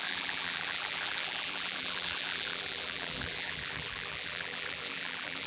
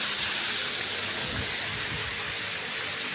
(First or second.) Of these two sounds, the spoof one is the first